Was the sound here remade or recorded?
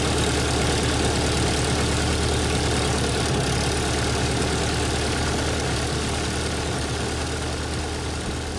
recorded